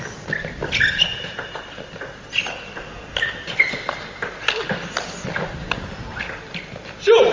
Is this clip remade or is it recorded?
recorded